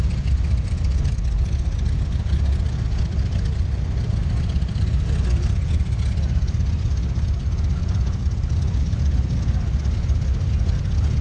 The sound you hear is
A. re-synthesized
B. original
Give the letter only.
A